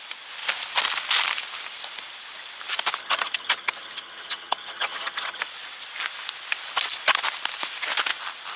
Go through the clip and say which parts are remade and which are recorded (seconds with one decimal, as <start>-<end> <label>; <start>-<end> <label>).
0.0-3.0 recorded; 3.0-5.4 remade; 5.4-8.6 recorded